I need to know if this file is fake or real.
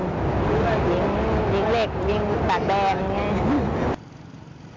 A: real